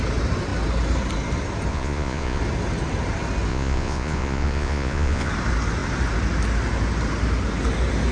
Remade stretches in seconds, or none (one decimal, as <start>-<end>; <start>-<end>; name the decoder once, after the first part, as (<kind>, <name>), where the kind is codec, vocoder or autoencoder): 1.7-2.4 (vocoder, Vocos); 3.5-5.3